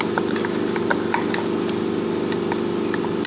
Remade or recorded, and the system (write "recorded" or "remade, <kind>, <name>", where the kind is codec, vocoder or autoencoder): recorded